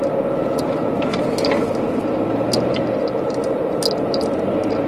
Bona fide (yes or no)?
yes